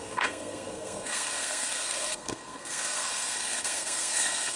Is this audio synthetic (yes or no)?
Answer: yes